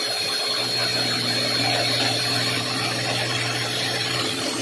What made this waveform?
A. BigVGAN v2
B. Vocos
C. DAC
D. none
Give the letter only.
D